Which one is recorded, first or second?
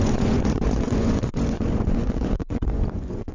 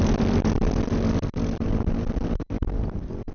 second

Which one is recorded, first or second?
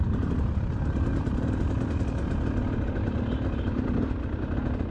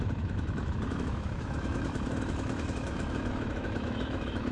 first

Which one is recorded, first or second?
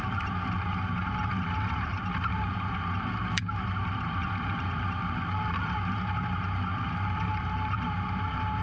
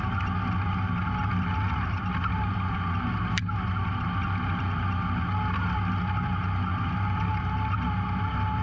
second